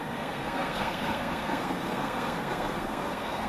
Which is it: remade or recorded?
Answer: remade